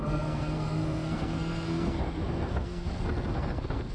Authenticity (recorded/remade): remade